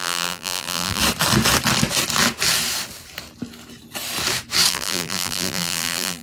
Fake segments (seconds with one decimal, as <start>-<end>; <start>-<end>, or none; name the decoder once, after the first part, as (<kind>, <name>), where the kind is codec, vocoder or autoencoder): 0.0-1.0 (vocoder, BigVGAN v2); 4.7-6.2